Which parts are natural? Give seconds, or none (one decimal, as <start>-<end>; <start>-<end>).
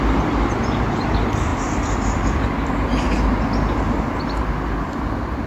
0.0-5.5